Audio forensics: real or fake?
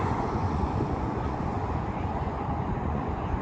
fake